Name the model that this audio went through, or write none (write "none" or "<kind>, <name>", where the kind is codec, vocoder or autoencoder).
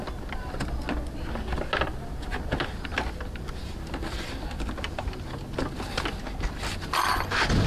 none